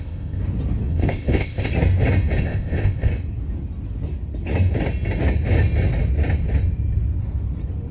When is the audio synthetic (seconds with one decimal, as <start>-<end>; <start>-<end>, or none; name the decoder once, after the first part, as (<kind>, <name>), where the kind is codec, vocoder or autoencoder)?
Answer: 0.0-0.4 (codec, ZipCodec); 0.9-1.7; 2.4-3.1